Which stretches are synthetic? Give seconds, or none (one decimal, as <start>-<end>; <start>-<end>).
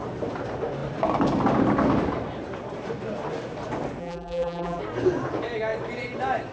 4.0-4.8